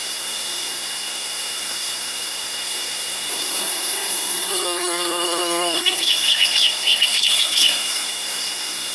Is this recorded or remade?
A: remade